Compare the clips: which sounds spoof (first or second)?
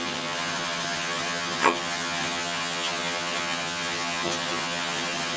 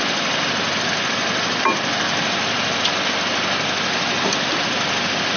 first